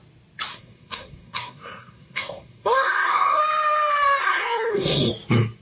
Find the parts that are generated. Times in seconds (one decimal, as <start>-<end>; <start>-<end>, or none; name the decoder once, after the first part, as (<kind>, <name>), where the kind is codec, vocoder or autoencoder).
0.5-3.4 (codec, SNAC); 4.2-5.1